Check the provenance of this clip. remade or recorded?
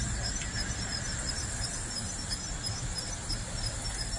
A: recorded